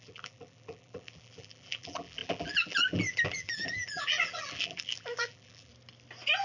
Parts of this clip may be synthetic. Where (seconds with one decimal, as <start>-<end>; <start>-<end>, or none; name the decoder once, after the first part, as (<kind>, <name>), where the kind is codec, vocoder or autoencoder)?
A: 0.0-5.7 (vocoder, BigVGAN v2)